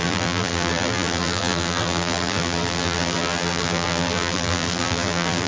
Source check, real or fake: fake